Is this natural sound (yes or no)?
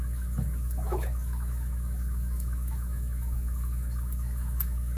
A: no